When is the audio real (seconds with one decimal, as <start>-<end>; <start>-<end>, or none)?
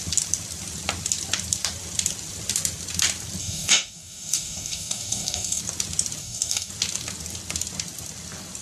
0.0-3.4; 5.6-6.2; 6.7-8.6